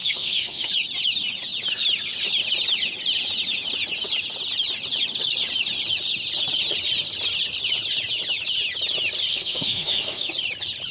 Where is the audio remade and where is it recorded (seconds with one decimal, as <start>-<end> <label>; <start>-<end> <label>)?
0.0-0.7 remade; 0.7-9.3 recorded; 9.3-10.3 remade; 10.3-10.9 recorded